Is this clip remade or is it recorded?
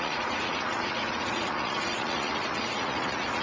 remade